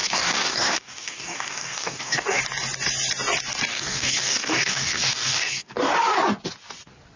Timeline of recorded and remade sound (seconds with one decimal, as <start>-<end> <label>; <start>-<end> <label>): 0.0-2.4 remade; 2.4-3.7 recorded; 3.7-5.9 remade; 5.9-7.2 recorded